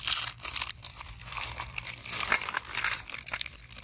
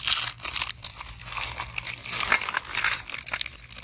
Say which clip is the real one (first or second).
second